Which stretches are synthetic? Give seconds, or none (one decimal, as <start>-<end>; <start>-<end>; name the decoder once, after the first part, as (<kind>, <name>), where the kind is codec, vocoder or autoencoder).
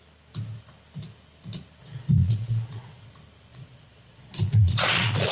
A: 1.8-3.1 (vocoder, Vocos); 3.5-5.3